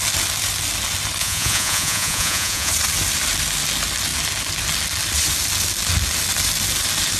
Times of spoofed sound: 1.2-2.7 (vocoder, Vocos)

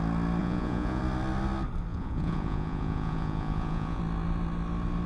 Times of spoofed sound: 0.4-1.0 (vocoder, Vocos); 1.9-4.0

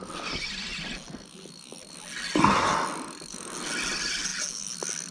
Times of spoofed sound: none

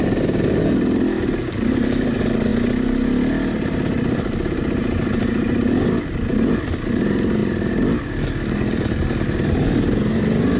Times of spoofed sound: none

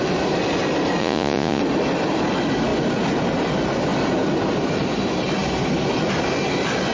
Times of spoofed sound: 1.0-1.6 (vocoder, Vocos)

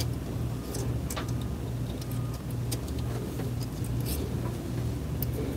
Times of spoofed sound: none

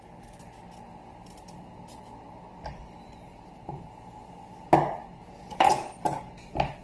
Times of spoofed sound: 3.3-4.2 (vocoder, Vocos); 5.2-5.7

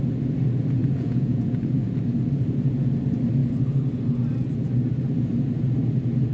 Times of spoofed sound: 0.8-1.9 (vocoder, Vocos)